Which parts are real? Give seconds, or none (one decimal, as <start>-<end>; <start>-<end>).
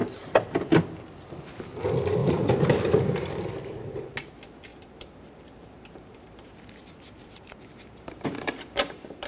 0.0-2.2; 2.8-4.7